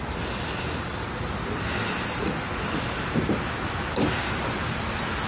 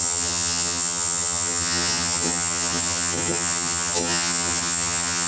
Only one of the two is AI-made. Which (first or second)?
second